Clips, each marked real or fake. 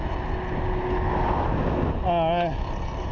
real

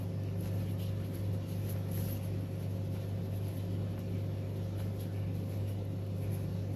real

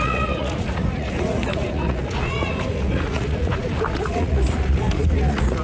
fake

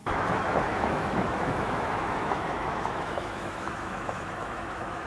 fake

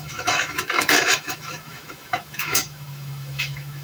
fake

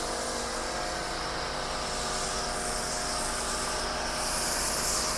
real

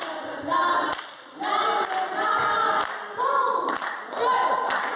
real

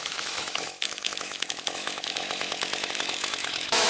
fake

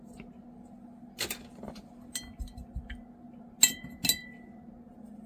real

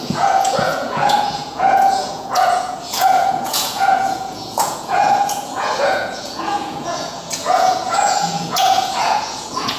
fake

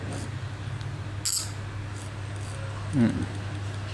real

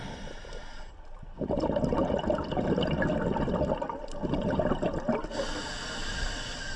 real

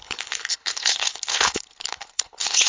fake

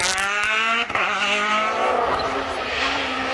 real